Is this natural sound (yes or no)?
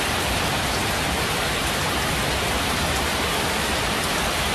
no